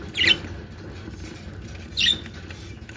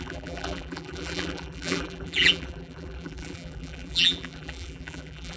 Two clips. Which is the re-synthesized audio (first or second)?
second